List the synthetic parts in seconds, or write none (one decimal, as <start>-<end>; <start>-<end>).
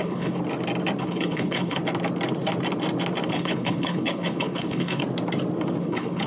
0.0-0.4; 1.0-1.8; 3.3-5.0; 5.8-6.3